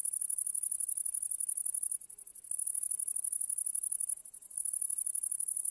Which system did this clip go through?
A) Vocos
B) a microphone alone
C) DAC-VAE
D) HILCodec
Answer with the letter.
B